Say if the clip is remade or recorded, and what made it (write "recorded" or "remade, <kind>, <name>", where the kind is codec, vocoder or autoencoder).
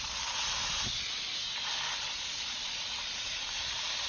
recorded